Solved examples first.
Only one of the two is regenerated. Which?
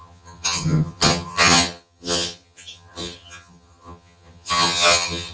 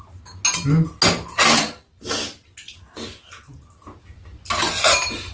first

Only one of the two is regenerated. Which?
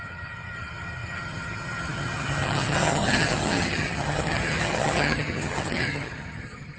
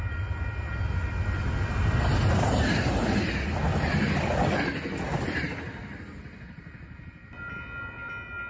first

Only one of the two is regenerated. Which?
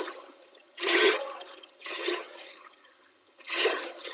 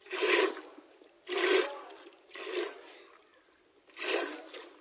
first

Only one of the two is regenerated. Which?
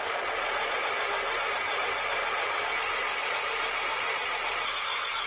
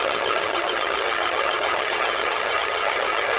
second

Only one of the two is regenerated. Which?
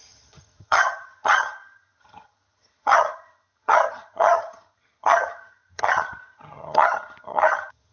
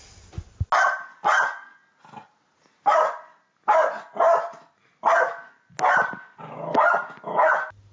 first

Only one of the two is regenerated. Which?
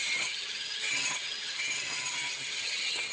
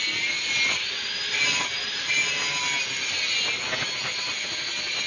first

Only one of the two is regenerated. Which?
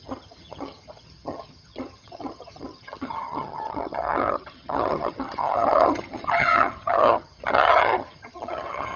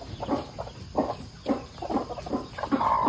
first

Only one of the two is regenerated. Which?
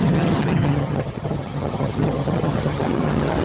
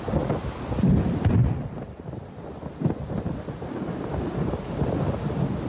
first